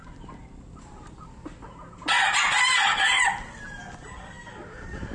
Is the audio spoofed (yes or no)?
no